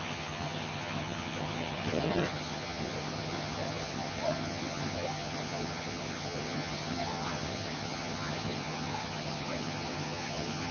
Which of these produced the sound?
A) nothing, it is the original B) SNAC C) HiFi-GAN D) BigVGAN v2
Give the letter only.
C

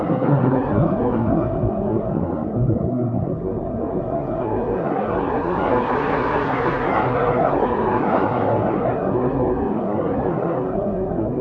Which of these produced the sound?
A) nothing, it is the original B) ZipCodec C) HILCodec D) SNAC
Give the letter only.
D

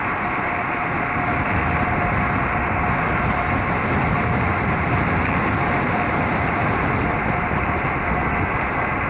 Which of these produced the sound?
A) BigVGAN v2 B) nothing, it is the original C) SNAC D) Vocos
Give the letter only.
B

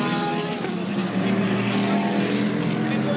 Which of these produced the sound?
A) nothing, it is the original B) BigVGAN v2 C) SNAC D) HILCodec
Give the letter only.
A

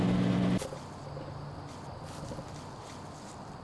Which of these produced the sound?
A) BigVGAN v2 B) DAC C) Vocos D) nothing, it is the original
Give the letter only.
D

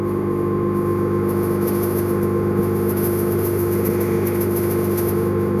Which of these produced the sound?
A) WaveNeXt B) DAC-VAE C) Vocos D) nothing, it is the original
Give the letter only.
B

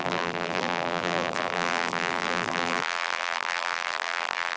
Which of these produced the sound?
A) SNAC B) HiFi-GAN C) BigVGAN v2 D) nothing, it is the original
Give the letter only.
C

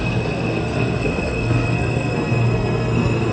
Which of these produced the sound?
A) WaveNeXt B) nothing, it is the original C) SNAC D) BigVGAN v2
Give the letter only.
C